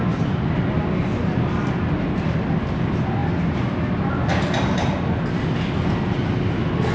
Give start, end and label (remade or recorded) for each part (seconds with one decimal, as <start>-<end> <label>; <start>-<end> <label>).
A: 0.0-6.9 recorded